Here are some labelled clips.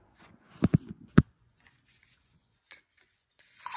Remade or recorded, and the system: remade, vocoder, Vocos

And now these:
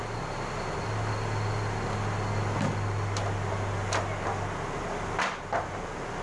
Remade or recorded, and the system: recorded